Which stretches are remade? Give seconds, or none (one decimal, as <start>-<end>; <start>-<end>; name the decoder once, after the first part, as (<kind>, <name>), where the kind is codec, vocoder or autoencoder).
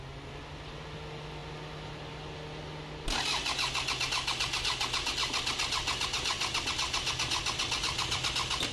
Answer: none